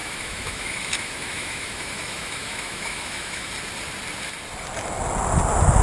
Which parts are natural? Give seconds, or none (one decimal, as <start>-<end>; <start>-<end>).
3.5-5.8